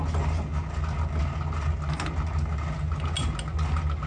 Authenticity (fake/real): real